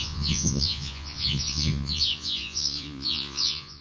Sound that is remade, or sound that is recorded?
remade